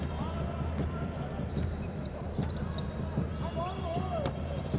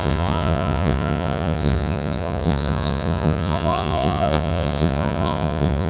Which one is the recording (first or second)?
first